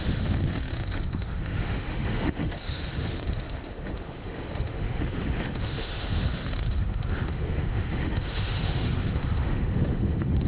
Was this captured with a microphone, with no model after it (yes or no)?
no